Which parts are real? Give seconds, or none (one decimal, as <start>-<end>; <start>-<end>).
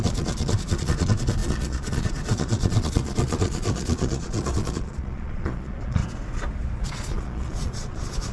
6.0-6.8